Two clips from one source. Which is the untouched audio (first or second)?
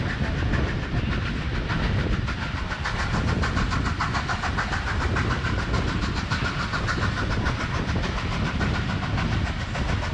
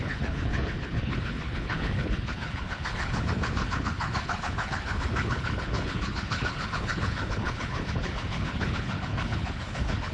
first